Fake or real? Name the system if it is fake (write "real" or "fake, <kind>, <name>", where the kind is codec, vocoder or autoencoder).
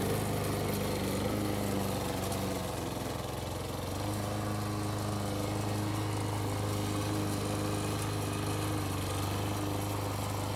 real